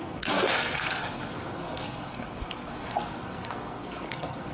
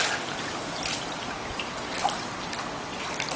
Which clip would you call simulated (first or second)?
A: first